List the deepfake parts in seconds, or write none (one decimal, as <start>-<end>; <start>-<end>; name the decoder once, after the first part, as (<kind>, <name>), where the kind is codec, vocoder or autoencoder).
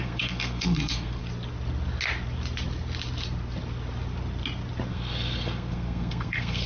0.0-1.2 (codec, SNAC); 4.9-6.7